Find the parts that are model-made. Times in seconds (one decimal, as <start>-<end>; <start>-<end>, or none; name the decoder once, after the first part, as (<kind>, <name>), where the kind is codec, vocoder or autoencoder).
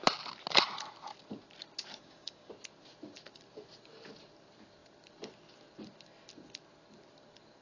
2.0-2.5 (codec, DAC)